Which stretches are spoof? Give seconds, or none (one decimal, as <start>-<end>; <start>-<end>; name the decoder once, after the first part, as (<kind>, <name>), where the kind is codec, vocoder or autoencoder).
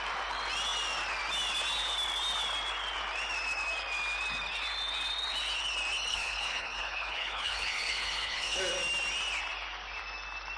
6.1-8.6 (codec, HILCodec)